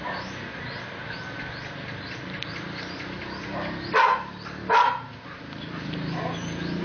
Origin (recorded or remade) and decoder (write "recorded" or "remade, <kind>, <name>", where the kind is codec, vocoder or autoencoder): recorded